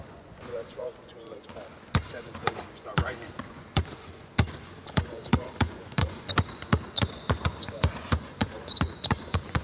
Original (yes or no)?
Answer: no